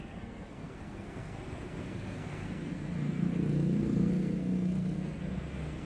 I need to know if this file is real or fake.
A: fake